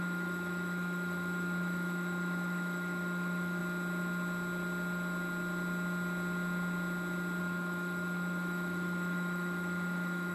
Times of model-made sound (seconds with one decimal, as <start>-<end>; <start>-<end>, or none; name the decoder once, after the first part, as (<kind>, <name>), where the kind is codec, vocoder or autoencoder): 0.0-3.6 (autoencoder, DAC-VAE); 7.4-10.3

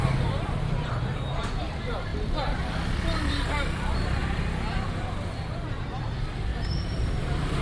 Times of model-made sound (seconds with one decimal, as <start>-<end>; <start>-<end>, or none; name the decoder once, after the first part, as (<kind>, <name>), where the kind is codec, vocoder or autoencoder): 6.5-7.6 (vocoder, BigVGAN v2)

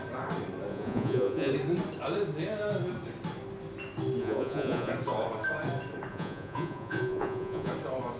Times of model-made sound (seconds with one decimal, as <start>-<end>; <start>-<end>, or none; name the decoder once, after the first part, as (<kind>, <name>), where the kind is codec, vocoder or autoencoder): 0.7-1.5 (vocoder, Vocos); 4.2-4.9; 6.1-7.7

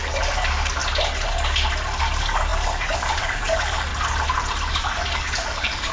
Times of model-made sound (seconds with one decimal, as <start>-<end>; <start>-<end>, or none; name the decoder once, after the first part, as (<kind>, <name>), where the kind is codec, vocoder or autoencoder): 0.0-0.8 (codec, DAC); 2.0-3.9; 4.7-5.9